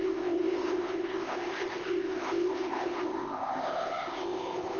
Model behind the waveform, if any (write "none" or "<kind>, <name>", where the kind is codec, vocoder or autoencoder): codec, ZipCodec